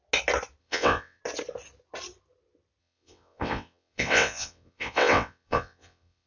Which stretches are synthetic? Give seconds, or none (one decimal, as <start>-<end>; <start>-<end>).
0.6-1.2; 2.8-6.3